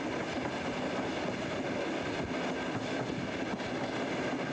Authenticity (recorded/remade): recorded